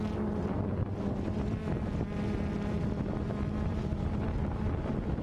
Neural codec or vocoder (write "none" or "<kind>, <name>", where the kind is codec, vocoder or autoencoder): none